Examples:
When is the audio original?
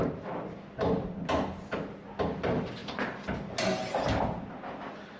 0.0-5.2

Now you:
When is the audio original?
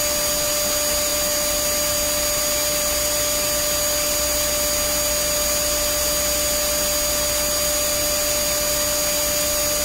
0.0-9.8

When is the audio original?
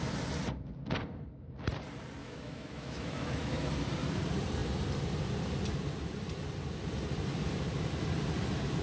0.0-2.2; 3.7-8.8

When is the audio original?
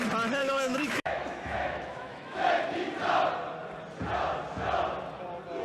0.0-0.4; 2.5-5.6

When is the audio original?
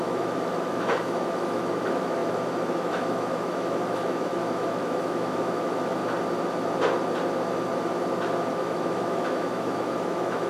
6.0-8.5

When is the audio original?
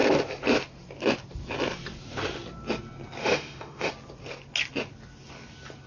0.0-3.2; 3.9-5.9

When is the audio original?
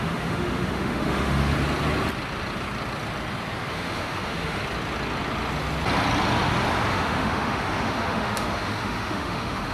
1.5-3.7; 4.6-6.9